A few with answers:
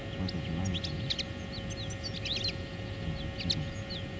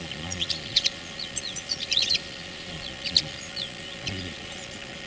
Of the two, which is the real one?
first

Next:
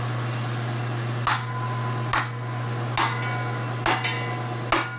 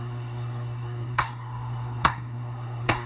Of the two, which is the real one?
first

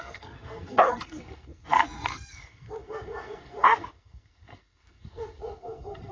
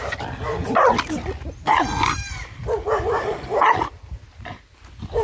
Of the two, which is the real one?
second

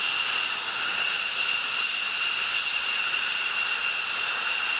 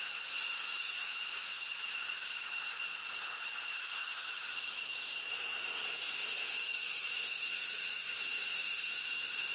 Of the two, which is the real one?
first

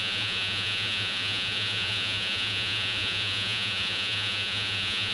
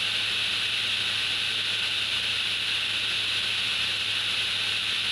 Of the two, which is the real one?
second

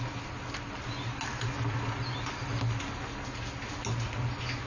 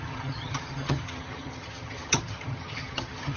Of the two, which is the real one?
first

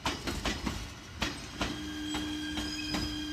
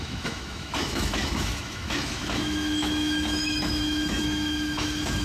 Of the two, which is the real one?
first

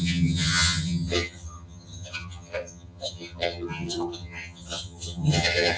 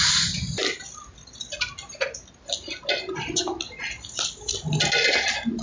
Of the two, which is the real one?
second